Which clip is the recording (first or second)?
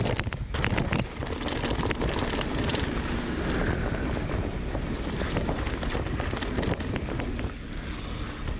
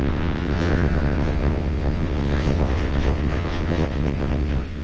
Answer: first